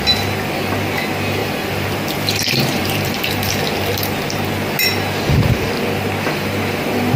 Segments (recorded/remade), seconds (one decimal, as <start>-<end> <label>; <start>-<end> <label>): 0.0-1.4 recorded; 1.4-3.5 remade; 3.5-7.2 recorded

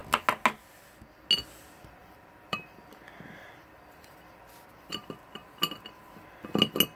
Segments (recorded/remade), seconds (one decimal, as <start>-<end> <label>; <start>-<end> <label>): 0.0-2.0 recorded; 2.0-5.0 remade; 5.0-7.0 recorded

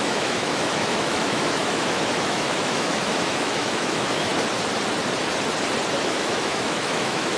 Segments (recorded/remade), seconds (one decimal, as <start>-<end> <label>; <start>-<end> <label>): 0.0-4.3 remade; 4.3-6.0 recorded; 6.0-7.4 remade

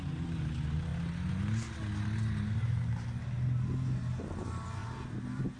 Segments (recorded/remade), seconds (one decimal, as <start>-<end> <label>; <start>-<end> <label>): 0.0-5.6 recorded

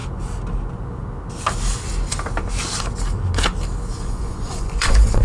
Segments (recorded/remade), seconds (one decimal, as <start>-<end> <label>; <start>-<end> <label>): 0.0-3.9 recorded; 3.9-5.2 remade